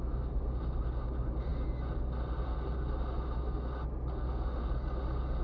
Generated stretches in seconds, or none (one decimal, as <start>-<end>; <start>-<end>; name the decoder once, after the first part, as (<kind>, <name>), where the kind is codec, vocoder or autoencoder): none

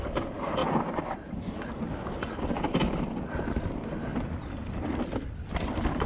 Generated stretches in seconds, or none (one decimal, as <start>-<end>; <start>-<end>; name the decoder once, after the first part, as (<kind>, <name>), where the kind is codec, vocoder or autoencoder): 4.1-6.1 (vocoder, BigVGAN v2)

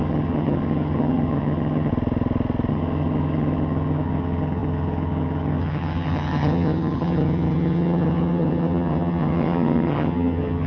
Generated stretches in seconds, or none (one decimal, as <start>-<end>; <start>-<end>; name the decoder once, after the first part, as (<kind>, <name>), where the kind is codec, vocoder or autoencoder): 0.0-1.9 (vocoder, HiFi-GAN); 2.7-10.7